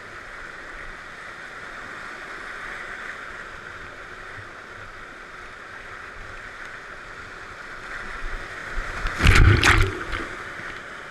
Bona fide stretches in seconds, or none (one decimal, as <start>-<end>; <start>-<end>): 0.0-11.1